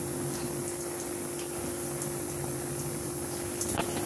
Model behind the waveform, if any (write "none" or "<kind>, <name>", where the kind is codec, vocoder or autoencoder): none